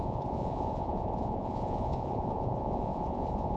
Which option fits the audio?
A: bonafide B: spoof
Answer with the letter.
B